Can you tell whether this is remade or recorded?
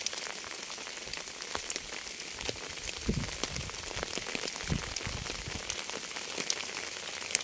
recorded